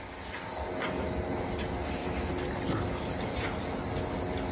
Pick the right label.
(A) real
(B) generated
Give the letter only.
A